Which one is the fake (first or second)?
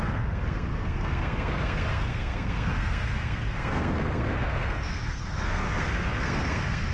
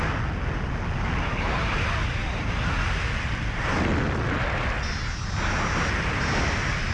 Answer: first